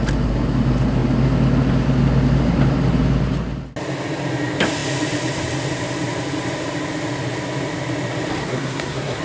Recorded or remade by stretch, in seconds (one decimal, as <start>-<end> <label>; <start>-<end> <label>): 0.0-8.4 recorded; 8.4-9.2 remade